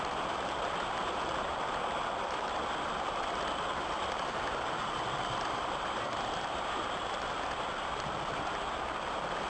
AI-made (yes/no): no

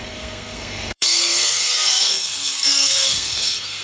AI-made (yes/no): yes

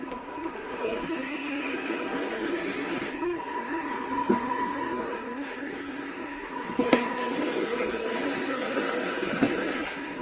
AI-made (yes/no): yes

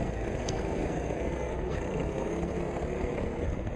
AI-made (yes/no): yes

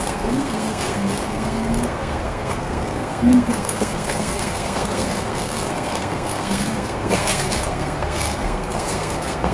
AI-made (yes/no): yes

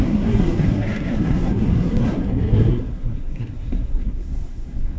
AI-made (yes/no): yes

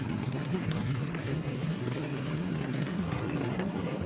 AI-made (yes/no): yes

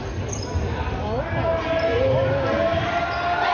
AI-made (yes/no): no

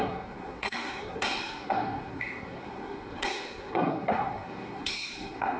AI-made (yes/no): yes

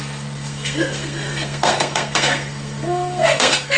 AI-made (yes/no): yes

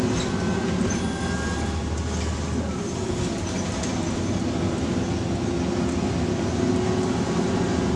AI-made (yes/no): no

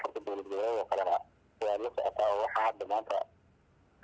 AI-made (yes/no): no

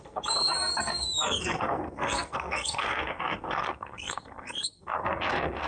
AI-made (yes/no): yes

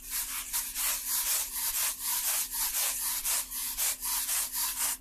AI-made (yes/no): no